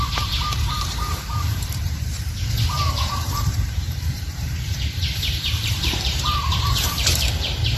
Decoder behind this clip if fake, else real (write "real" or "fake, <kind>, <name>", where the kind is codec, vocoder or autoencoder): fake, vocoder, BigVGAN v2